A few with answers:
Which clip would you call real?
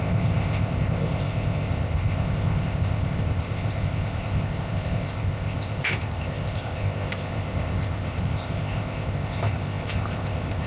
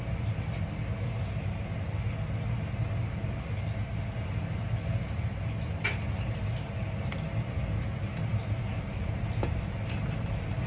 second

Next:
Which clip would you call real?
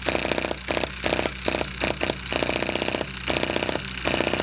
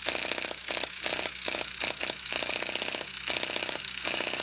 first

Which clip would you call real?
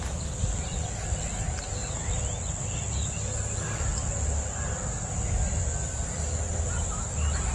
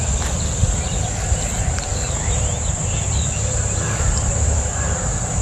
first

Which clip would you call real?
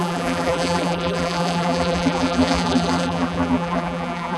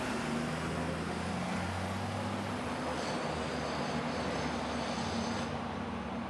second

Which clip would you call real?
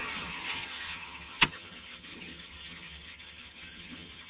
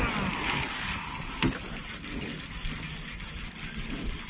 second